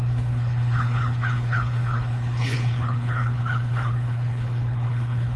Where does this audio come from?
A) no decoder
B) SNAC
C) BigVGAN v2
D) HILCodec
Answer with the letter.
D